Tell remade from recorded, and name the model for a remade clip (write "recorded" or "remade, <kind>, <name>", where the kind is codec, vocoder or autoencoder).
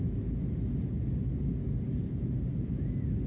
recorded